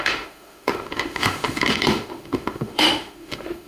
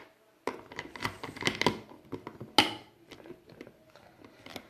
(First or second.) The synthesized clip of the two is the first